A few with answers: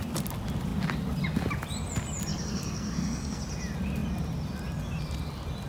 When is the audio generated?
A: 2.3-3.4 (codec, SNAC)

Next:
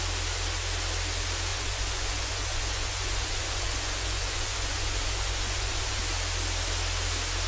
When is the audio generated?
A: 1.5-6.0 (vocoder, Vocos)

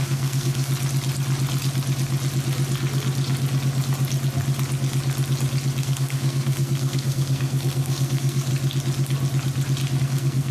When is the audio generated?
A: 0.0-0.7 (codec, SNAC); 5.8-8.5; 10.0-10.5

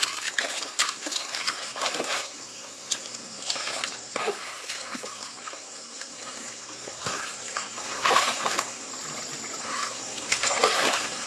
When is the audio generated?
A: 0.0-8.9 (codec, SNAC); 9.6-11.3

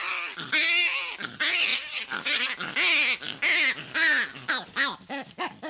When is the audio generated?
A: none

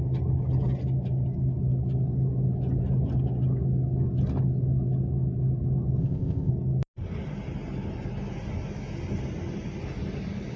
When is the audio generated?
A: 6.0-6.5 (codec, ZipCodec)

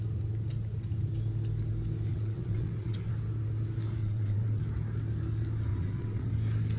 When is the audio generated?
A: 2.1-3.1 (vocoder, WaveNeXt); 4.0-4.6; 5.7-6.3